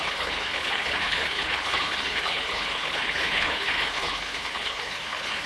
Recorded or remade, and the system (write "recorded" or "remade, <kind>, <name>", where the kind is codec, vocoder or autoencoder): remade, codec, HILCodec